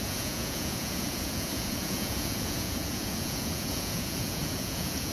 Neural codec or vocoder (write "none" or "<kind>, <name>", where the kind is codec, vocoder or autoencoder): vocoder, Vocos